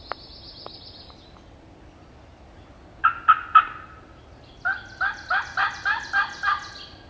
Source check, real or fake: real